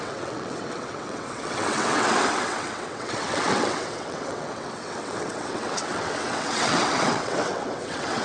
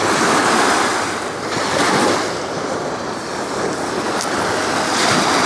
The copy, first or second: first